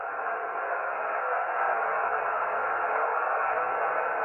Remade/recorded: remade